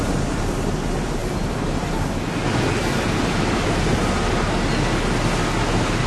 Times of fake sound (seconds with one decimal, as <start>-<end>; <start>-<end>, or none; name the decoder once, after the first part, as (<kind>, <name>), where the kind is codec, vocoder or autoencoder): none

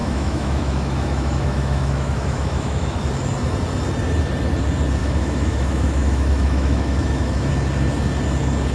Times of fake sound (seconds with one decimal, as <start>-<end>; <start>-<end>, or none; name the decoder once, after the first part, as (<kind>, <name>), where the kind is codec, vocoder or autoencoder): 0.0-3.0 (autoencoder, DAC-VAE); 5.0-7.5

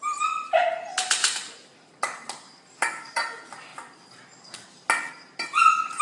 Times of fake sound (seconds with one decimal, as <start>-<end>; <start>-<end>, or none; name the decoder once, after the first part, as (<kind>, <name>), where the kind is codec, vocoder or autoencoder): none

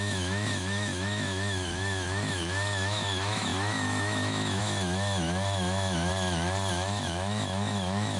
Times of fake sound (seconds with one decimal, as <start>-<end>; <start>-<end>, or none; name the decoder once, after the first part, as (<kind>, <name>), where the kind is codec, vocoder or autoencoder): 0.0-6.1 (autoencoder, DAC-VAE); 6.7-8.2